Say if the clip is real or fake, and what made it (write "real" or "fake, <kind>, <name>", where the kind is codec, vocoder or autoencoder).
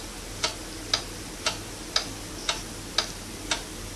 real